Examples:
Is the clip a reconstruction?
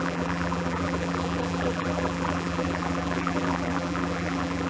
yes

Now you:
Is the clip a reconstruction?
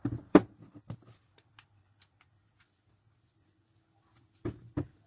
no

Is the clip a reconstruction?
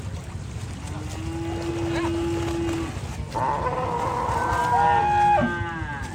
no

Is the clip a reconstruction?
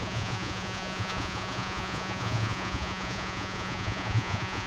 yes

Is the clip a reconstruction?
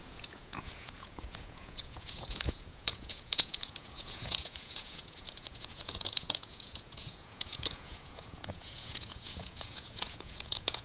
yes